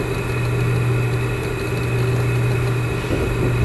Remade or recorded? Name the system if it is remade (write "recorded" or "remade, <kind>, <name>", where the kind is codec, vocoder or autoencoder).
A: recorded